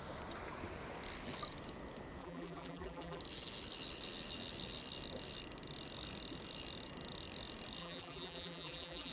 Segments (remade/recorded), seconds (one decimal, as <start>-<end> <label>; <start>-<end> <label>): 0.0-2.2 recorded; 2.2-3.2 remade; 3.2-7.8 recorded; 7.8-9.1 remade